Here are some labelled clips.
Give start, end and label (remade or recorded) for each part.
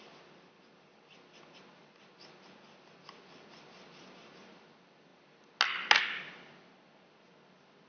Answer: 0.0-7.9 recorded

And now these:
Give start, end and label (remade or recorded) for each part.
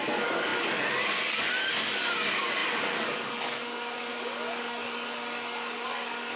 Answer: 0.0-6.4 remade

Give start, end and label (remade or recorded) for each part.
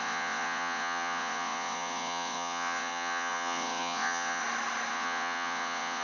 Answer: 0.0-4.4 remade; 4.4-4.9 recorded; 4.9-6.0 remade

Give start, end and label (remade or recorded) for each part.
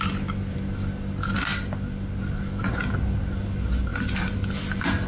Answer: 0.0-5.1 recorded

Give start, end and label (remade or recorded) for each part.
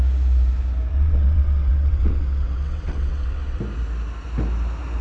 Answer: 0.0-0.9 recorded; 0.9-3.6 remade; 3.6-5.0 recorded